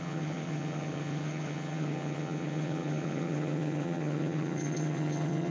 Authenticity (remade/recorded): remade